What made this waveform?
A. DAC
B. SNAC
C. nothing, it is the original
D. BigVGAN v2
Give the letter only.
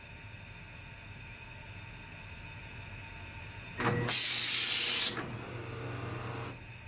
C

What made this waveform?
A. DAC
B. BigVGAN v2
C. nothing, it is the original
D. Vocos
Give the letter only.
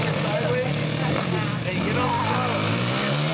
C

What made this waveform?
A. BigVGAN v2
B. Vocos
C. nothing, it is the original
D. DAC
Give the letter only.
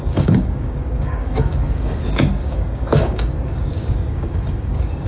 D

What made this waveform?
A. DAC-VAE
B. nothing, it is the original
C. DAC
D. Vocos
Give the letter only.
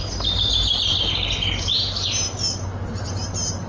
B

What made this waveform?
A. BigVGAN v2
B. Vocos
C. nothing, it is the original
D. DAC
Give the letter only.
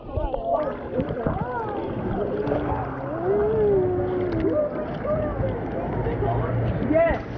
C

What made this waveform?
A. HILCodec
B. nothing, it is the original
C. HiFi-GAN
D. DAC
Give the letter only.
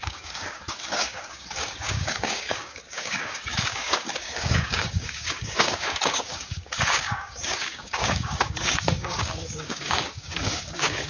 D